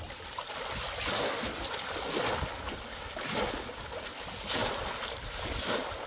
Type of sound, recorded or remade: recorded